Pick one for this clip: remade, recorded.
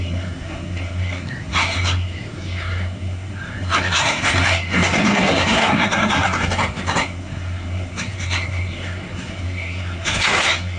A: remade